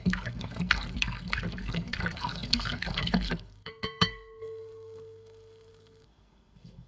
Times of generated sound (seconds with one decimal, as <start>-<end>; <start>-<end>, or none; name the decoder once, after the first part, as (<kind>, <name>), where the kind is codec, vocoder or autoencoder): 0.0-6.9 (codec, SNAC)

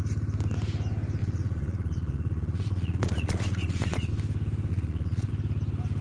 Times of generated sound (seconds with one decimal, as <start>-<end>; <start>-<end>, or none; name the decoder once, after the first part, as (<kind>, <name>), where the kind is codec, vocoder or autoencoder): 1.2-4.1 (vocoder, Vocos); 4.7-5.3

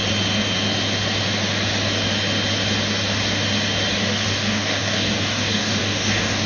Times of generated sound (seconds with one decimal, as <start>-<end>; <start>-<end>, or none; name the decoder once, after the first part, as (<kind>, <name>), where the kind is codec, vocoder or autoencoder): 3.9-6.5 (codec, DAC)